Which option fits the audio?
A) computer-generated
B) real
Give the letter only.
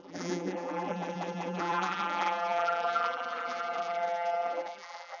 A